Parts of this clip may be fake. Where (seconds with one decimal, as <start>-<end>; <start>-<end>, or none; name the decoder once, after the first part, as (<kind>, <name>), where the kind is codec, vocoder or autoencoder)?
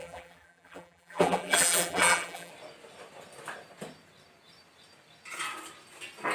0.0-2.5 (vocoder, BigVGAN v2)